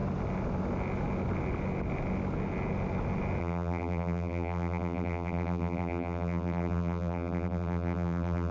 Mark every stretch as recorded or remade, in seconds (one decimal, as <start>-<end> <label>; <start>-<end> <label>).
0.0-3.4 recorded; 3.4-8.5 remade